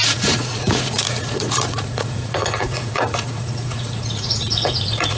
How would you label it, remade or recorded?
remade